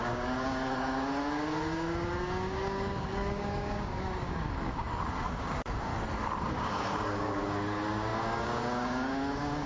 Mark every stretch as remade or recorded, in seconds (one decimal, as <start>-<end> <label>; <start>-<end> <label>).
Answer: 0.0-5.9 remade; 5.9-6.4 recorded; 6.4-9.7 remade